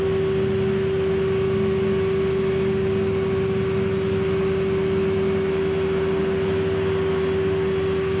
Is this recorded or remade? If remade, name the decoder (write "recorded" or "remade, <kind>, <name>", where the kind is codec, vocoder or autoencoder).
recorded